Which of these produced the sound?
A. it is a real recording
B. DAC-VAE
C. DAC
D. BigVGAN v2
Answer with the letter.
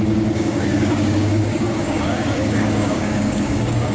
C